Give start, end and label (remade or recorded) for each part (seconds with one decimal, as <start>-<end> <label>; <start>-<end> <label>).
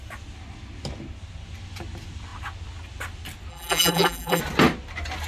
0.0-3.5 recorded; 3.5-4.4 remade; 4.4-5.3 recorded